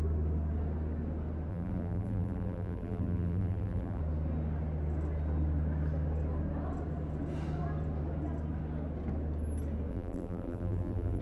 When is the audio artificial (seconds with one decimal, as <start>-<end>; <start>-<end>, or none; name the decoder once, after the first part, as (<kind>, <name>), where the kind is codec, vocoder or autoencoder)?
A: 1.5-4.0 (vocoder, BigVGAN v2); 9.9-11.2